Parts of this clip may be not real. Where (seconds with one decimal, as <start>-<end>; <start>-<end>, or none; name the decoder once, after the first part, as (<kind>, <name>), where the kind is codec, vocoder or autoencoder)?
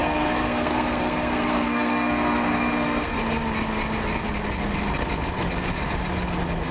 0.0-3.2 (codec, SNAC)